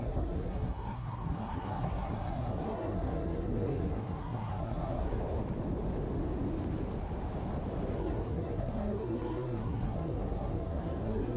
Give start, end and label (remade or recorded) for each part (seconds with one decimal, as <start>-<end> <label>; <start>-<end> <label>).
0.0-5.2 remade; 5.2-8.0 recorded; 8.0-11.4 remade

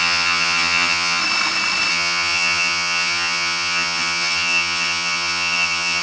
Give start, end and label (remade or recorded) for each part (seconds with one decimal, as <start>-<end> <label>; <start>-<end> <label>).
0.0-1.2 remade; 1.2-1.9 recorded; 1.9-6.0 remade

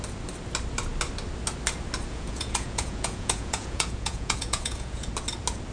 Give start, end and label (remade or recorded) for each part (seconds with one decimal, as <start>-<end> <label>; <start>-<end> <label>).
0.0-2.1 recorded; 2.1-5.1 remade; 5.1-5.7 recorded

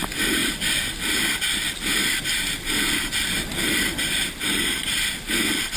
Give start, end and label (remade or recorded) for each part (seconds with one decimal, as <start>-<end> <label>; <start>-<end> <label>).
0.0-5.8 recorded

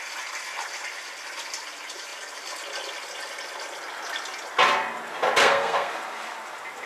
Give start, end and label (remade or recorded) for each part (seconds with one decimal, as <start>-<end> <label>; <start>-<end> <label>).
0.0-5.4 recorded; 5.4-5.9 remade; 5.9-6.9 recorded

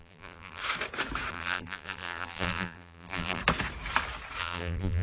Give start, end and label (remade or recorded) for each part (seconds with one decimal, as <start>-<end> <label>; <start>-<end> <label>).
0.0-0.6 remade; 0.6-1.3 recorded; 1.3-3.4 remade; 3.4-4.4 recorded; 4.4-5.0 remade

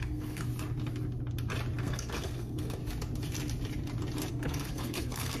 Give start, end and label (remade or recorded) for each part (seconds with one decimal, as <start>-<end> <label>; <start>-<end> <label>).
0.0-0.5 remade; 0.5-1.8 recorded; 1.8-2.8 remade; 2.8-4.3 recorded; 4.3-5.4 remade

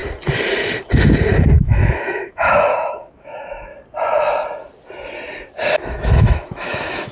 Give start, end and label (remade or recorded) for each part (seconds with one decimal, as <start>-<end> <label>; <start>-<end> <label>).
0.0-1.6 recorded; 1.6-3.7 remade; 3.7-5.7 recorded; 5.7-7.1 remade